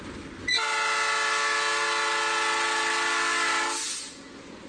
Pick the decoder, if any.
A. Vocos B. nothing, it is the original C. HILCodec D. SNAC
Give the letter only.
B